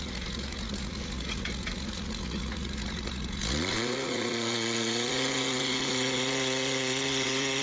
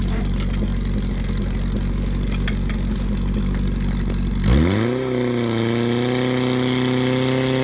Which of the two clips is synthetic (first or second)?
first